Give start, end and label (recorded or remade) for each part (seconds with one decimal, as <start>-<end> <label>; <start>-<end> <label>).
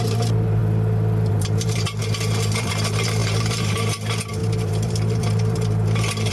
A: 0.0-0.6 remade; 0.6-1.3 recorded; 1.3-6.3 remade